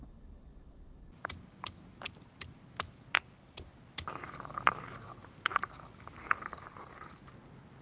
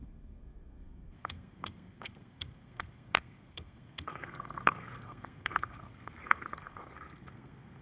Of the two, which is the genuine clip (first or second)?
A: first